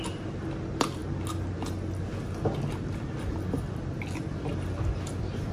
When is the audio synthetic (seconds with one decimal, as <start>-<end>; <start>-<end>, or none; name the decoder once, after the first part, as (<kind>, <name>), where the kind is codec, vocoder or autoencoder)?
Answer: none